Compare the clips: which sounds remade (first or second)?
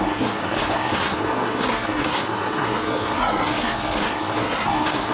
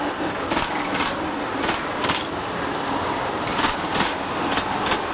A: first